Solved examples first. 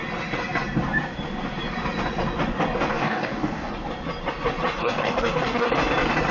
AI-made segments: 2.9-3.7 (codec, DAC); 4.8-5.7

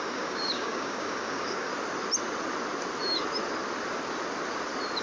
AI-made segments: 0.0-1.7 (codec, DAC)